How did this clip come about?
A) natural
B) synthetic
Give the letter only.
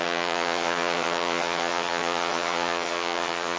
B